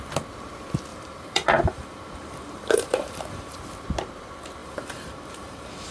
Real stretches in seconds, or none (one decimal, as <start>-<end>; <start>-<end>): 0.0-0.9; 3.6-4.6